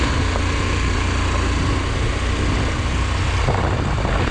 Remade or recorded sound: recorded